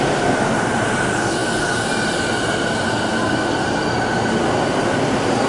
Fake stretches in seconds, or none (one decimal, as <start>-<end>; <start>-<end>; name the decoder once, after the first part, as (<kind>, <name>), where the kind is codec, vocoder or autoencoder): none